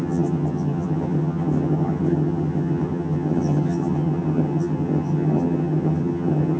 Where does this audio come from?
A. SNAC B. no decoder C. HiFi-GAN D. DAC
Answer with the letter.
C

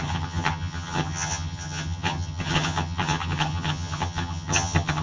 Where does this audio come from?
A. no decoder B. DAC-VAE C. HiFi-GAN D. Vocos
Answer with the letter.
C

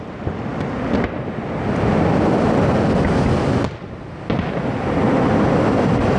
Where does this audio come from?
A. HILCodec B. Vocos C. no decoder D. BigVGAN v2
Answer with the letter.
C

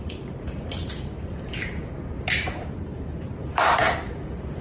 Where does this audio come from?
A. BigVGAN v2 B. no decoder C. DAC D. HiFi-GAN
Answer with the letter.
A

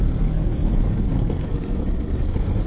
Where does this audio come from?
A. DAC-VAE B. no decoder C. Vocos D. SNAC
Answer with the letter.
D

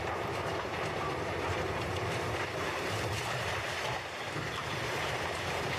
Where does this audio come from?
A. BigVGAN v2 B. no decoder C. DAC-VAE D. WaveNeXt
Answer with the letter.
A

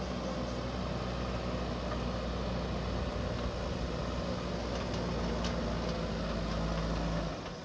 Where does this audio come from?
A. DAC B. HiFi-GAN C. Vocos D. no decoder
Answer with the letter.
D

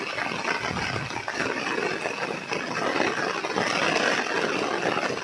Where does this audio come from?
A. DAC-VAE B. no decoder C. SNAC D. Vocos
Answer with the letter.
B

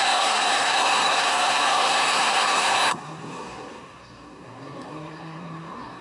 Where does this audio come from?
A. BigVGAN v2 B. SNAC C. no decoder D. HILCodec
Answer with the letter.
B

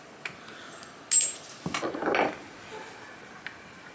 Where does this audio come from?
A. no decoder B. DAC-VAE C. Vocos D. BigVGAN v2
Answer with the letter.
A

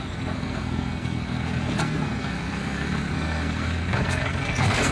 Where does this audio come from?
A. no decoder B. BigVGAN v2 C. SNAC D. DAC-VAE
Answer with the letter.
C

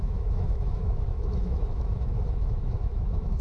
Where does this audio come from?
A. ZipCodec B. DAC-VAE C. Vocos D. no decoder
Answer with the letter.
B